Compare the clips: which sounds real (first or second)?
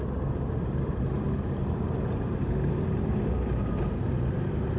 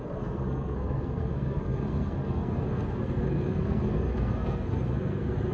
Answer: first